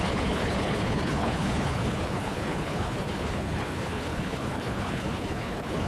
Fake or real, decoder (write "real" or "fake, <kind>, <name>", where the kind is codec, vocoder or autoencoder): fake, codec, HILCodec